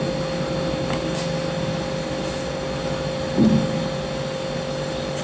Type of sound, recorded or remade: recorded